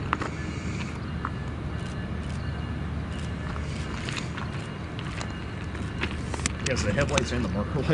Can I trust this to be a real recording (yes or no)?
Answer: yes